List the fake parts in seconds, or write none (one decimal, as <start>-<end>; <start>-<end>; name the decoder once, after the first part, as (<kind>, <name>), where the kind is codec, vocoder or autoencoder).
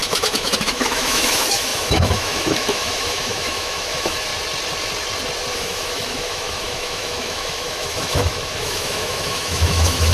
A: 0.0-4.3 (autoencoder, DAC-VAE); 5.5-10.1